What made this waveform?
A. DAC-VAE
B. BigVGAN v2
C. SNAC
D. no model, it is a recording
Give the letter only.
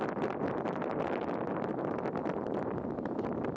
D